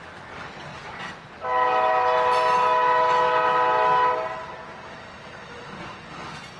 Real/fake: real